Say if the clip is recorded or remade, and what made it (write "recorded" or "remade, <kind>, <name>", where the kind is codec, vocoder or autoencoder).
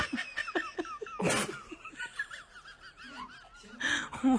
recorded